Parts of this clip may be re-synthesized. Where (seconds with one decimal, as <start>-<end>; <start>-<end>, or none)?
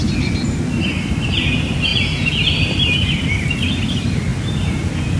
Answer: none